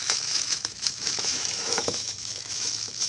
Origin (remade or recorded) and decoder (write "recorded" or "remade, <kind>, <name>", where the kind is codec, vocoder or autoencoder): remade, autoencoder, DAC-VAE